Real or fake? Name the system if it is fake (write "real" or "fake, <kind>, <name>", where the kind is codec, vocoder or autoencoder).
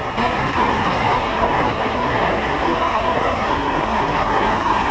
fake, codec, SNAC